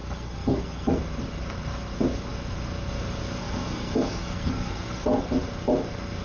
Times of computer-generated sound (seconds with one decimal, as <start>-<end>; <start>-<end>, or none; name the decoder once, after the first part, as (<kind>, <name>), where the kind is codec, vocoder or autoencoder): 0.0-1.0 (codec, SNAC); 3.4-5.2